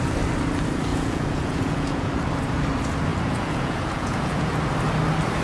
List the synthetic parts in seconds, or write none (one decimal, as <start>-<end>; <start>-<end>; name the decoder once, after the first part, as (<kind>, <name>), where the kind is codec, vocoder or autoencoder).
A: 0.9-2.1 (vocoder, Vocos); 3.1-4.5